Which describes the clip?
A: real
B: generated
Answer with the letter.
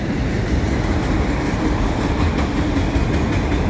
A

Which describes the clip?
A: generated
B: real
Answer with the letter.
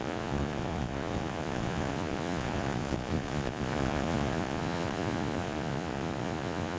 A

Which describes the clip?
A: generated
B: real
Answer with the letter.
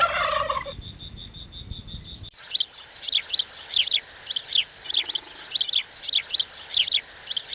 B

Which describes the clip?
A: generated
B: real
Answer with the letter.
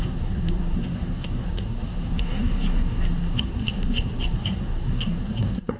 A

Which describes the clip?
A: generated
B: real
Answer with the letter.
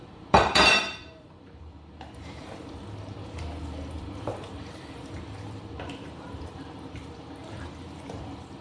A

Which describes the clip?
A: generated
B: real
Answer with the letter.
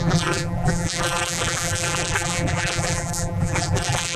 A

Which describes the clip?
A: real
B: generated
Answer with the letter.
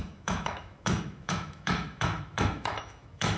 B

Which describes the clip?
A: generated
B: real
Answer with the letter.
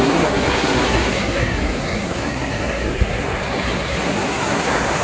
A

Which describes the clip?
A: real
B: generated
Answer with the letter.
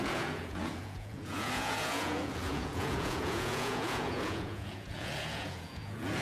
B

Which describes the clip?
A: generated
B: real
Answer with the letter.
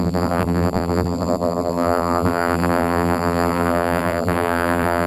A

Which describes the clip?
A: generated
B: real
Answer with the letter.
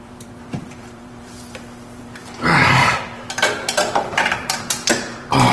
A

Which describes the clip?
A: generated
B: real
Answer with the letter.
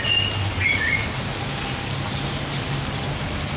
B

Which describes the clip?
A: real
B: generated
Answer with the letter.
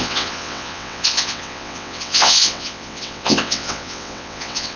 B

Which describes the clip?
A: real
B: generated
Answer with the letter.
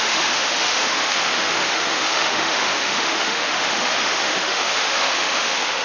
B